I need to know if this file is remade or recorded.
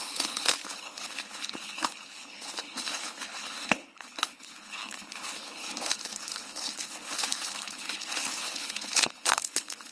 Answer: remade